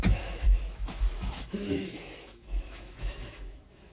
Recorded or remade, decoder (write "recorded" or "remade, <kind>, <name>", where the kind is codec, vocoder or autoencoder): remade, autoencoder, DAC-VAE